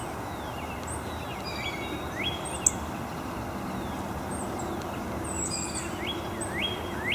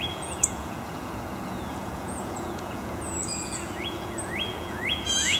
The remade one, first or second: second